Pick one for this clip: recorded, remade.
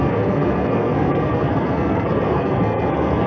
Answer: remade